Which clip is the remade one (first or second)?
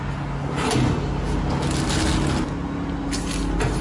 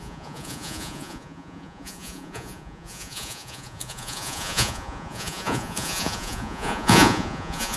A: second